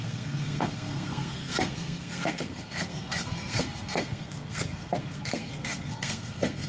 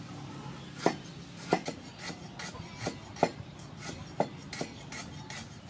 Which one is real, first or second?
second